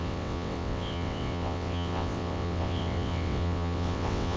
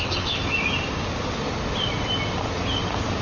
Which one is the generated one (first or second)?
first